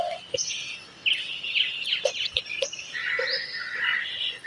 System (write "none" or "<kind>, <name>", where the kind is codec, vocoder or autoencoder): none